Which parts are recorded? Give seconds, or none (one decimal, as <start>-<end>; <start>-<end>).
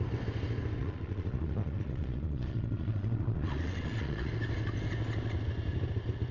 0.0-0.8; 4.3-6.3